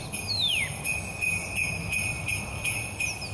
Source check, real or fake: real